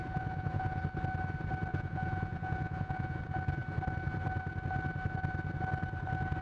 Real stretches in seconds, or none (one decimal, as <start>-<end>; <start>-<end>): 0.8-1.7; 3.2-6.4